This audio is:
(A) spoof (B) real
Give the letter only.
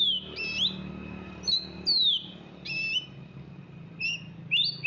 B